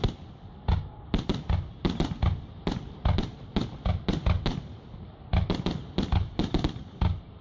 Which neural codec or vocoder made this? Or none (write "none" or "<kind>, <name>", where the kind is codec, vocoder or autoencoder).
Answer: none